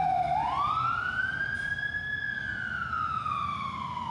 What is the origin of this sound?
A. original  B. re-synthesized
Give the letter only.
A